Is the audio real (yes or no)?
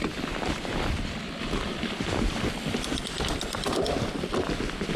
no